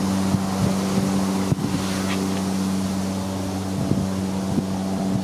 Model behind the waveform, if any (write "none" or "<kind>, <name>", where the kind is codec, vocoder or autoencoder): none